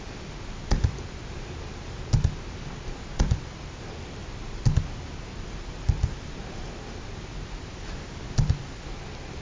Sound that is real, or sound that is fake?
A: real